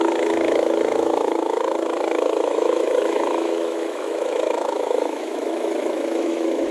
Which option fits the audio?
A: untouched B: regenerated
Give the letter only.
B